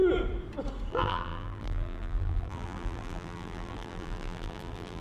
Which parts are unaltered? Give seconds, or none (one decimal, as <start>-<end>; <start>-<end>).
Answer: 0.0-0.9